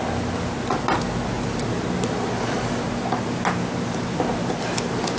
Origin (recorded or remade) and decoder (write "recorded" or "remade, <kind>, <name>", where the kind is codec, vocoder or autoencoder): recorded